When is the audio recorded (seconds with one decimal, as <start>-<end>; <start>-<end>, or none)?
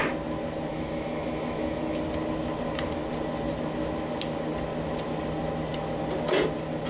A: 0.0-0.7; 2.0-6.9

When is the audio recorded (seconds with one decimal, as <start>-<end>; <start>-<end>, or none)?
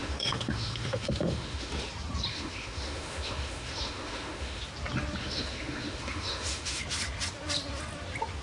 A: 1.9-2.3; 4.6-5.2; 6.8-8.4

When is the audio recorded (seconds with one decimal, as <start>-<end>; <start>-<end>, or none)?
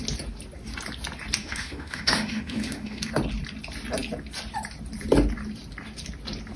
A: 0.0-1.4; 3.1-6.6